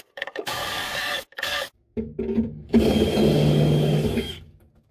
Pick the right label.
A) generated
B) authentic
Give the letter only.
A